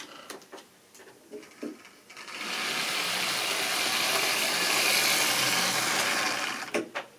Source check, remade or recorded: recorded